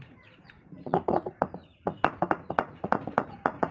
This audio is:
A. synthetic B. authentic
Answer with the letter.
A